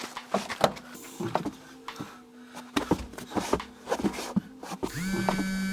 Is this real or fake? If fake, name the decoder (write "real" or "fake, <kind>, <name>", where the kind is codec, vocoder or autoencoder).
real